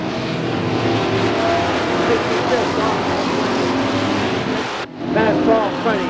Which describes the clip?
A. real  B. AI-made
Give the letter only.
A